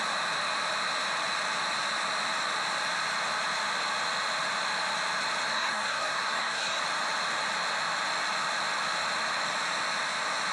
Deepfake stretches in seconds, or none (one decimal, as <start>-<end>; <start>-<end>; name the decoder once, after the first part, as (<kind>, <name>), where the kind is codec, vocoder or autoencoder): 5.5-6.8 (codec, SNAC)